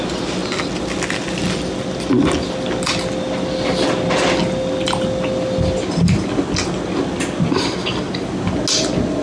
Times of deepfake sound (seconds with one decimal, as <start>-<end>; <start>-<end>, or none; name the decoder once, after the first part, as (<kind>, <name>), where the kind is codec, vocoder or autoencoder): none